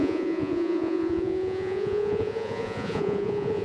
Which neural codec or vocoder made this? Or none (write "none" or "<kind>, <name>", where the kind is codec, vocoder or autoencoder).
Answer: vocoder, Vocos